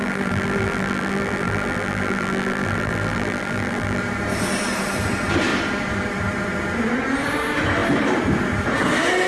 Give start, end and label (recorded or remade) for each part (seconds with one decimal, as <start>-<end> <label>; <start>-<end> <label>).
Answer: 0.0-4.0 remade; 4.0-9.3 recorded